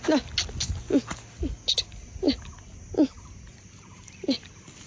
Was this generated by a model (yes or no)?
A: no